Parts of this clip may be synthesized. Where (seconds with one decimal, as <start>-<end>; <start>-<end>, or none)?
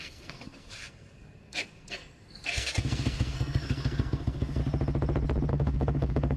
0.0-4.6; 5.5-6.4